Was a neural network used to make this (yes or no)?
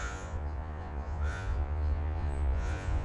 yes